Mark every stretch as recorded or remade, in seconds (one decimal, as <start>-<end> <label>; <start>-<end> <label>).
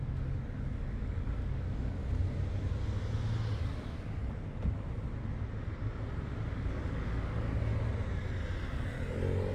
0.0-2.0 remade; 2.0-3.6 recorded; 3.6-4.2 remade; 4.2-6.5 recorded; 6.5-7.7 remade; 7.7-9.5 recorded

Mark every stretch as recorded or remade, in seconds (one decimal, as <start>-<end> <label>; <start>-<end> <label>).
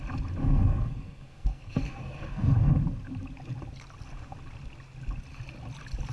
0.0-0.4 recorded; 0.4-2.7 remade; 2.7-6.1 recorded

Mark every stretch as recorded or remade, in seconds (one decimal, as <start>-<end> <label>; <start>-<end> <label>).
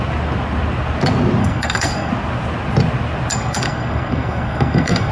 0.0-1.4 recorded; 1.4-2.1 remade; 2.1-3.3 recorded; 3.3-5.1 remade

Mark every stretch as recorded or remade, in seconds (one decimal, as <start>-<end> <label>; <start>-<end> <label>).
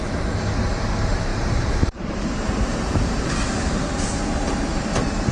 0.0-1.3 recorded; 1.3-3.9 remade; 3.9-5.3 recorded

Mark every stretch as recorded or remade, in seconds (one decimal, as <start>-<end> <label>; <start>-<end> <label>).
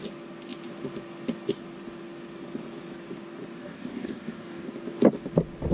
0.0-3.6 recorded; 3.6-4.7 remade; 4.7-5.7 recorded